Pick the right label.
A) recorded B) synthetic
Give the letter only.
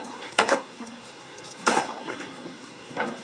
B